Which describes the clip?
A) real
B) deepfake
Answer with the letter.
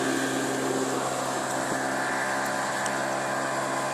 A